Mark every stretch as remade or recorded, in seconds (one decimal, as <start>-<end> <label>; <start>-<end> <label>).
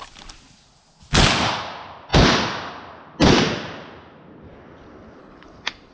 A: 0.0-5.2 recorded; 5.2-5.9 remade